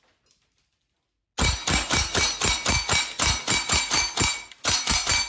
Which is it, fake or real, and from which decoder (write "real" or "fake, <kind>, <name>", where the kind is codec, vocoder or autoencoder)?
real